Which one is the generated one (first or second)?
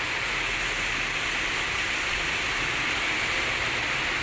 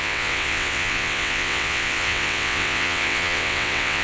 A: second